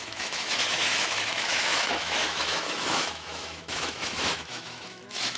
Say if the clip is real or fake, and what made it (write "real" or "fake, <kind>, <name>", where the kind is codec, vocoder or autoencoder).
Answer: fake, autoencoder, DAC-VAE